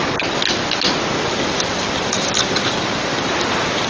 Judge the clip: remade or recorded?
recorded